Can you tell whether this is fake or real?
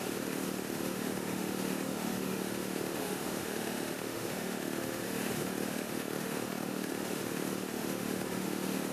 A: fake